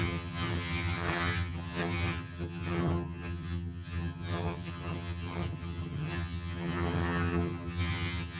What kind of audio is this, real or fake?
fake